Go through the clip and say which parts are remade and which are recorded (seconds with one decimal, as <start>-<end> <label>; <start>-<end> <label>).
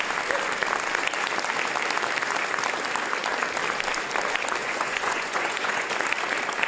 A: 0.0-4.6 recorded; 4.6-5.9 remade; 5.9-6.7 recorded